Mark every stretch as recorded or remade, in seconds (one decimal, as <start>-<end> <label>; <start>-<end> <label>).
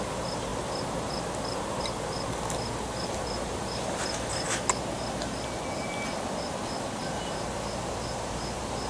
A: 0.0-8.9 recorded